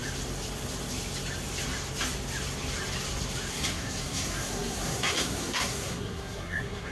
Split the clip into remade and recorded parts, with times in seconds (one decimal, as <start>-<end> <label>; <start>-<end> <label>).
0.0-3.5 recorded; 3.5-6.9 remade